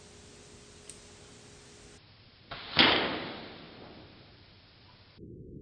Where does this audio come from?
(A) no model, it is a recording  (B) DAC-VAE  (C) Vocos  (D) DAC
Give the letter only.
A